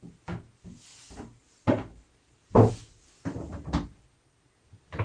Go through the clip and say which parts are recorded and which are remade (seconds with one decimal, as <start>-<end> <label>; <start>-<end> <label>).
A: 0.0-0.9 recorded; 0.9-2.7 remade; 2.7-5.0 recorded